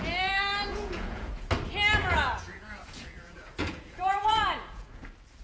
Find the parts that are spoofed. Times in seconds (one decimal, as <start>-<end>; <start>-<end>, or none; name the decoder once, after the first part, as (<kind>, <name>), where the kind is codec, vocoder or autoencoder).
0.7-1.5 (vocoder, Vocos); 2.0-5.0